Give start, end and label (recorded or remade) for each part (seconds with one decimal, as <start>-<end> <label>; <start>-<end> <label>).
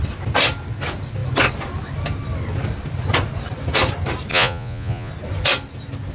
0.0-4.3 recorded; 4.3-5.1 remade; 5.1-6.1 recorded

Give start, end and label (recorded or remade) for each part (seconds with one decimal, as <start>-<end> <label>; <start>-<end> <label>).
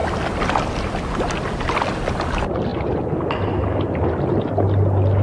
0.0-5.2 recorded